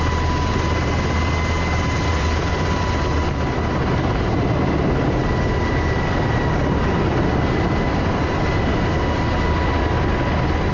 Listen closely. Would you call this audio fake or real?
real